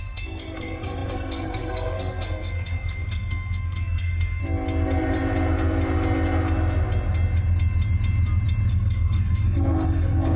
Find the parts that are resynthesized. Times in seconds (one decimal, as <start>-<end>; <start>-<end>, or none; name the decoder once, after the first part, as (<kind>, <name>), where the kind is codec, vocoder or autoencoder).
0.0-4.4 (codec, SNAC); 8.7-10.4